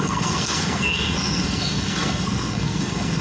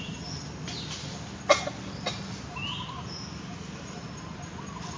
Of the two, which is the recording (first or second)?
second